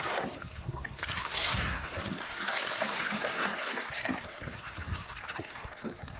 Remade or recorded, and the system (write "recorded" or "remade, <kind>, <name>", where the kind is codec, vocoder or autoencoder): remade, codec, SNAC